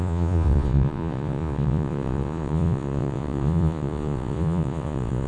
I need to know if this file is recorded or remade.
remade